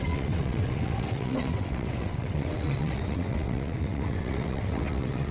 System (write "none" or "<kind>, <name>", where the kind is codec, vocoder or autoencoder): vocoder, WaveNeXt